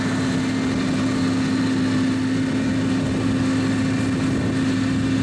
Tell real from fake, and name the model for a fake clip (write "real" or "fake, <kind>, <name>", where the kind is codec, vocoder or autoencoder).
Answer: real